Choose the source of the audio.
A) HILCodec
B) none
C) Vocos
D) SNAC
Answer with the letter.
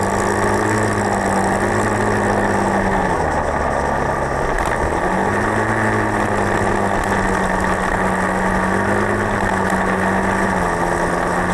B